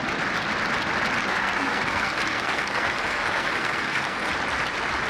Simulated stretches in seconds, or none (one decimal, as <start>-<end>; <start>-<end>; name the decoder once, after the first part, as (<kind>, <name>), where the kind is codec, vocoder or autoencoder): 1.2-4.3 (codec, SNAC)